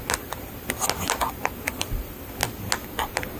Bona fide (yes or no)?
yes